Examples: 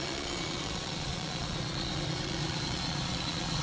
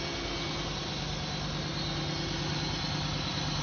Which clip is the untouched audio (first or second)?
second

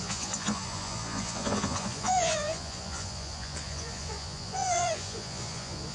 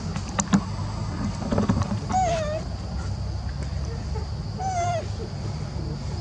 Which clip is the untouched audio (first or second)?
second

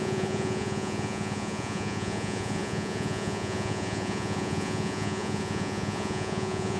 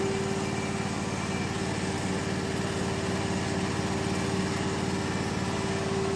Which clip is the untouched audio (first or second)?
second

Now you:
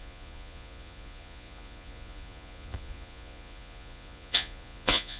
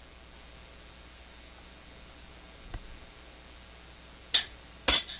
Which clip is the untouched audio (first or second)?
second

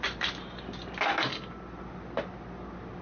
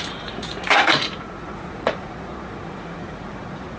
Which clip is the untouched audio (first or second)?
first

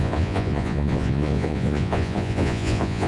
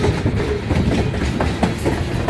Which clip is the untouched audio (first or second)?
second